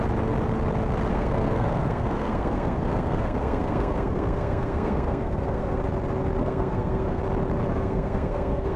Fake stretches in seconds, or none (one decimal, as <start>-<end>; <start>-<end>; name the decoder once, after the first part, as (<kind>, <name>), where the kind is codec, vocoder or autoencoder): 1.1-5.8 (codec, SNAC); 6.4-7.2; 7.7-8.8